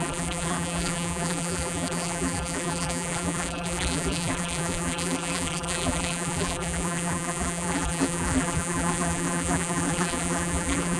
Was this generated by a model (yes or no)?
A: yes